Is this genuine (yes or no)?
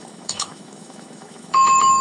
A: no